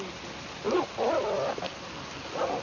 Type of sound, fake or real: real